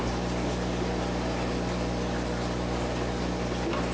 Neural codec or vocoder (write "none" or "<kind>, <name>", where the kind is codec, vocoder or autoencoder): none